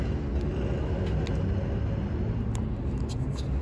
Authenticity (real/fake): real